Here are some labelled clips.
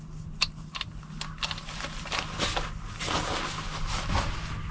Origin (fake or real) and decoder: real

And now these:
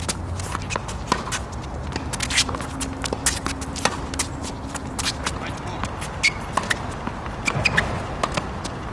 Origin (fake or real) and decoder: real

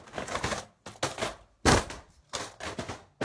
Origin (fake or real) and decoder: real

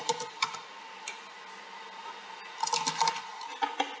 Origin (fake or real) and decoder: real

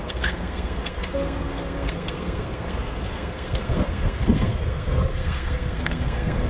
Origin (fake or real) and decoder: fake, codec, SNAC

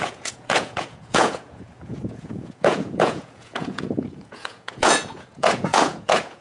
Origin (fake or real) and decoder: fake, vocoder, Vocos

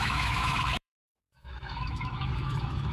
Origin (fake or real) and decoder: fake, autoencoder, DAC-VAE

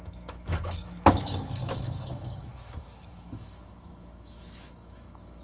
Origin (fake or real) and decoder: fake, autoencoder, DAC-VAE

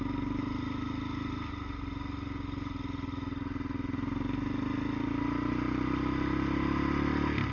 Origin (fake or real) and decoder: real